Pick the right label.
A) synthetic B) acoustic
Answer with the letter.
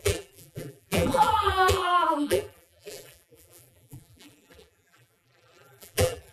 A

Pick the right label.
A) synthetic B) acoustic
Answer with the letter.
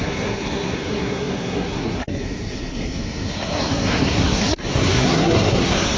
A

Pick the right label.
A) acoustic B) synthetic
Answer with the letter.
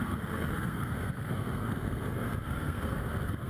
B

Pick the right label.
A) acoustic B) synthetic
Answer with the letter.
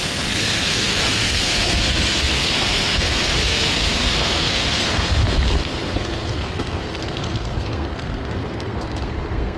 B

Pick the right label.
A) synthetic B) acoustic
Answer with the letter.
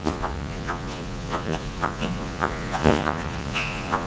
A